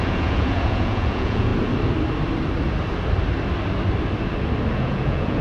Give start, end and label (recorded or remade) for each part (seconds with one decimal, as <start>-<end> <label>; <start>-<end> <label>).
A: 0.0-1.5 remade; 1.5-4.7 recorded; 4.7-5.4 remade